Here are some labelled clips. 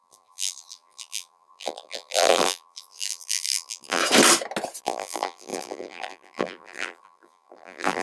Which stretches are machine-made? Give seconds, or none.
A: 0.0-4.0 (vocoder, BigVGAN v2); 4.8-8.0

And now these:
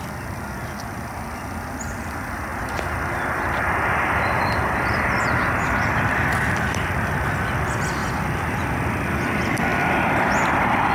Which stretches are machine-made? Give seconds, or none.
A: 2.5-6.0 (vocoder, BigVGAN v2); 9.7-10.9

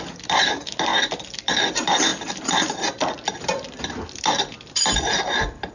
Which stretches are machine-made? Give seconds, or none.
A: none

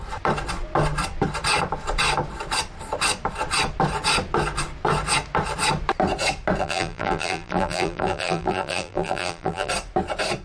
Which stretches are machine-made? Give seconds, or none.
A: 6.6-9.7 (vocoder, BigVGAN v2)

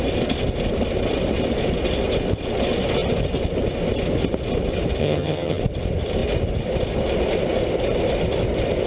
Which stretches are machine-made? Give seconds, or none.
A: 5.0-5.6 (vocoder, HiFi-GAN)